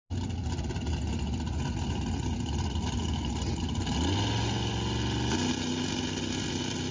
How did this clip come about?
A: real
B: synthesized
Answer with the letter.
A